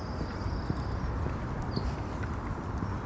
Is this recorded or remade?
recorded